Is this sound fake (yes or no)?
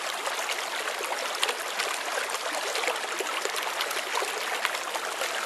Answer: no